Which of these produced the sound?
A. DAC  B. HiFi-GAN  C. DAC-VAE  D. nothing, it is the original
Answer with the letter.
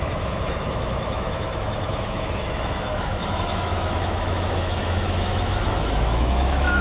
C